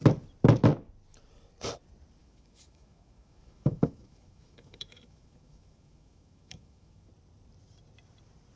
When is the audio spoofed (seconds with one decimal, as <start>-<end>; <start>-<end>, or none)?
2.2-7.1